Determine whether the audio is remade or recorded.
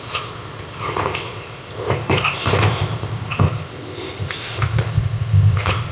remade